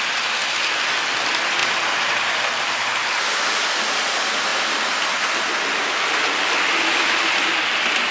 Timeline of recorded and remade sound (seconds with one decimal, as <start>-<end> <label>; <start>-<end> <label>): 0.0-8.1 recorded